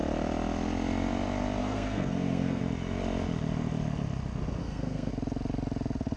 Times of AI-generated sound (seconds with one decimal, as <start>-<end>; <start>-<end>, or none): 1.6-2.6; 4.6-5.1